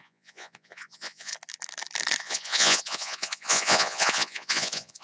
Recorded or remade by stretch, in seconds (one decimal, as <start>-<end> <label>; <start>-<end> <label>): 0.0-1.3 remade; 1.3-2.2 recorded; 2.2-5.0 remade

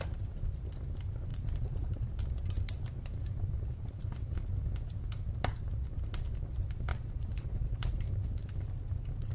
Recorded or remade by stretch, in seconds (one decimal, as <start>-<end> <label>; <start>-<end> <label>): 0.0-1.3 recorded; 1.3-2.1 remade; 2.1-6.9 recorded; 6.9-8.0 remade; 8.0-9.3 recorded

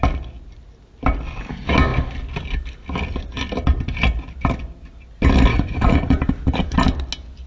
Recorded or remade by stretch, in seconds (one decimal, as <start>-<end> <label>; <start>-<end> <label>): 0.0-5.5 recorded; 5.5-6.2 remade; 6.2-7.5 recorded

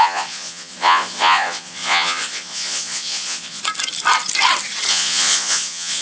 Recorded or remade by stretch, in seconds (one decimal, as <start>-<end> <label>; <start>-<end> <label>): 0.0-3.6 remade; 3.6-4.9 recorded; 4.9-6.0 remade

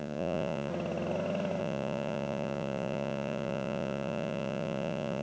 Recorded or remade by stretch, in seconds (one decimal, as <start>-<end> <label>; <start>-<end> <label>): 0.0-0.7 remade; 0.7-1.6 recorded; 1.6-5.2 remade

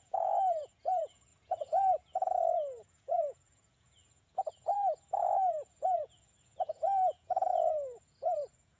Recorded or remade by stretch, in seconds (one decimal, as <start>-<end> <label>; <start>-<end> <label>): 0.0-8.8 remade